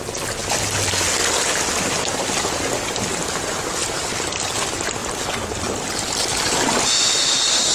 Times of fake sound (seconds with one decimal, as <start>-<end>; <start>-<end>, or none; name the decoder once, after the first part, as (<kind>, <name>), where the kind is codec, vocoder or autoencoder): none